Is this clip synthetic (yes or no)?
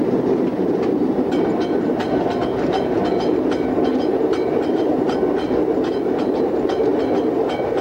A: no